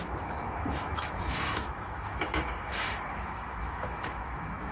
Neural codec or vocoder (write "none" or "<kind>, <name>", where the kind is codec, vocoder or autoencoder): autoencoder, DAC-VAE